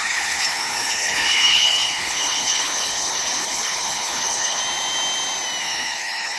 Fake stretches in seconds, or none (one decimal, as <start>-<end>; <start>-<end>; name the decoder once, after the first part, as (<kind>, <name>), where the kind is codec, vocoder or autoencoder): 0.0-4.6 (codec, HILCodec); 5.6-6.4